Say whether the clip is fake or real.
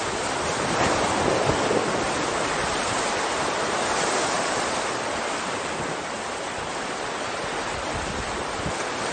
real